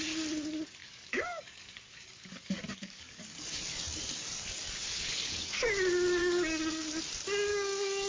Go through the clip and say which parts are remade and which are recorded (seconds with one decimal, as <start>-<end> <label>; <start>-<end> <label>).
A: 0.0-0.8 recorded; 0.8-5.7 remade; 5.7-6.2 recorded; 6.2-6.9 remade; 6.9-7.5 recorded; 7.5-8.1 remade